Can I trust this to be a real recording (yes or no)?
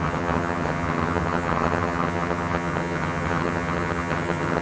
no